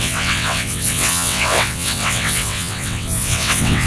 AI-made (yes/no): yes